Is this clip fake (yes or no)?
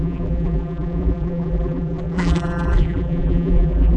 yes